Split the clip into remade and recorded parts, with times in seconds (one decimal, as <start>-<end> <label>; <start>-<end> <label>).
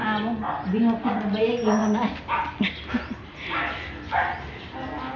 0.0-5.2 recorded